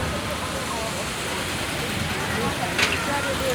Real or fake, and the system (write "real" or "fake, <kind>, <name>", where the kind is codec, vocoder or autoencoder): real